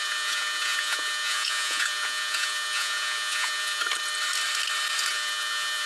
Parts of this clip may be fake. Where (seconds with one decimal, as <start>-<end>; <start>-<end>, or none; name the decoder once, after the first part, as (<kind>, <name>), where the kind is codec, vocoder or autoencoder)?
0.0-3.8 (vocoder, Vocos); 5.1-5.9